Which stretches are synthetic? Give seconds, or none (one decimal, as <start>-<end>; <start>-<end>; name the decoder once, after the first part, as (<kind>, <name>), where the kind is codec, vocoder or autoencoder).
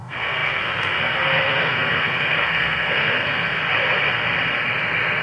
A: 0.0-3.6 (codec, SNAC)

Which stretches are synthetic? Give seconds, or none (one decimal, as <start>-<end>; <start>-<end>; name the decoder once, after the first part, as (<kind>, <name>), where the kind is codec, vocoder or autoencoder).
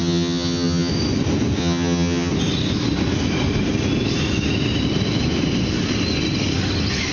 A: 0.0-0.9 (vocoder, HiFi-GAN); 1.6-2.3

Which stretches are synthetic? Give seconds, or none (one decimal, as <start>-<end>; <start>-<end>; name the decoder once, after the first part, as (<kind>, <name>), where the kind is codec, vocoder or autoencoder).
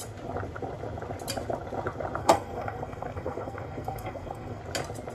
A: 2.2-4.6 (codec, SNAC)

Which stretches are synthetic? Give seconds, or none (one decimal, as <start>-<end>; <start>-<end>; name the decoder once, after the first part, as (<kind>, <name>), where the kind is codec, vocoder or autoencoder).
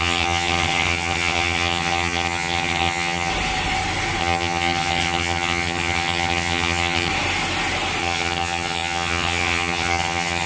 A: 0.0-3.3 (vocoder, HiFi-GAN); 4.2-7.1; 8.0-10.5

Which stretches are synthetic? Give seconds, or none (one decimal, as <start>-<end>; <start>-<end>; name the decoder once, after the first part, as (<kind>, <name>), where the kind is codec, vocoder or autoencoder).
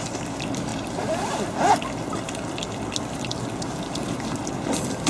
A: none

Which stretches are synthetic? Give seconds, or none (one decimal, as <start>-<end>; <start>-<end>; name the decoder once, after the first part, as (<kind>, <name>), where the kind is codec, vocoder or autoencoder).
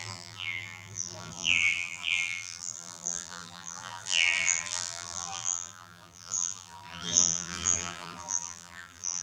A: 0.0-9.2 (vocoder, BigVGAN v2)